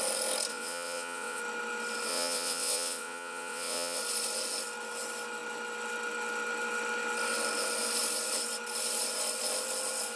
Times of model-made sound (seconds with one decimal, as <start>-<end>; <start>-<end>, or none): 0.5-1.4; 2.1-4.0